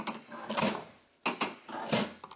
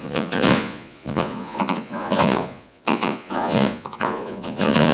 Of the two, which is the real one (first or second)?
first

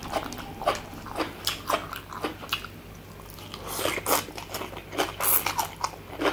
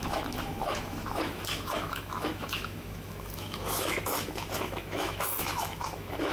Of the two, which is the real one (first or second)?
first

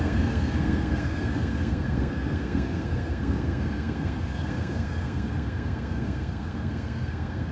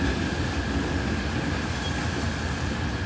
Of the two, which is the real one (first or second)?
second